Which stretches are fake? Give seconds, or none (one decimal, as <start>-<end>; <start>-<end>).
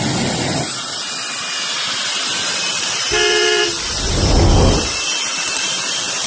2.7-3.6; 5.3-6.3